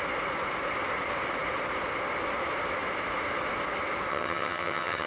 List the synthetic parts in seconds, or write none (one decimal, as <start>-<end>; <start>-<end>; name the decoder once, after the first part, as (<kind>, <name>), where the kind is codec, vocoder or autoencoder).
4.1-5.1 (vocoder, HiFi-GAN)